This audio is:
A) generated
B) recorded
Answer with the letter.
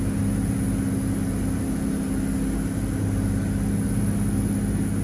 B